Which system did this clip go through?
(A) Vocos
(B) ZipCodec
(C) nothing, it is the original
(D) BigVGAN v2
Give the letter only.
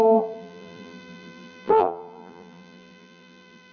D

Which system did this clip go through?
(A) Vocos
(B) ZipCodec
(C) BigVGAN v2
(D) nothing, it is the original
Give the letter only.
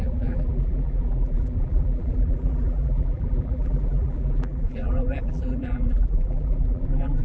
C